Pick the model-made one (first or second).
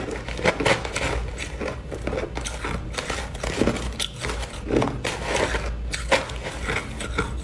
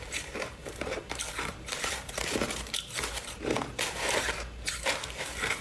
second